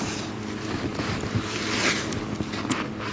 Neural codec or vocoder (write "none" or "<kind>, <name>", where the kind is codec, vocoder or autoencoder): none